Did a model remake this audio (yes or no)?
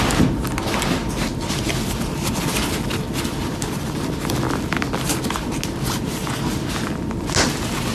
no